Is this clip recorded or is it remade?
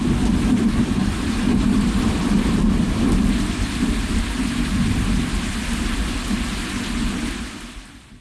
recorded